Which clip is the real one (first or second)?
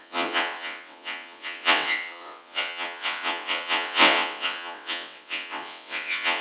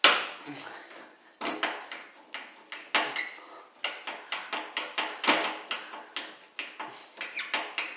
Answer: second